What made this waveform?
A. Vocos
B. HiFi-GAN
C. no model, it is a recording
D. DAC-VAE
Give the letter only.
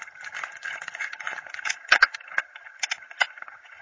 B